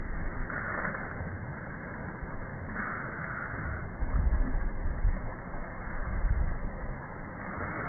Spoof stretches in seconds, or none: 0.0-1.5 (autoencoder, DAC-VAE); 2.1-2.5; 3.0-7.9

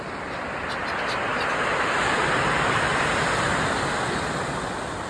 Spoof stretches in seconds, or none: none